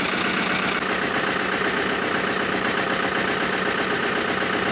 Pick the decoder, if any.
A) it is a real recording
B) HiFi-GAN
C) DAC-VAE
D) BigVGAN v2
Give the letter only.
A